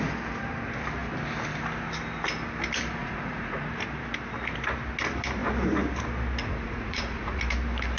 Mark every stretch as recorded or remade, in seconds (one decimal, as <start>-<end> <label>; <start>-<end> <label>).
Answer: 0.0-3.0 recorded; 3.0-3.7 remade; 3.7-6.4 recorded; 6.4-7.4 remade; 7.4-8.0 recorded